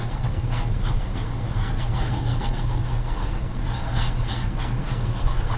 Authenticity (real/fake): fake